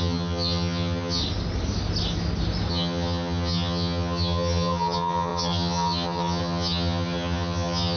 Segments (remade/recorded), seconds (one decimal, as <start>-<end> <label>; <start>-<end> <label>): 0.0-1.2 remade; 1.2-2.7 recorded; 2.7-8.0 remade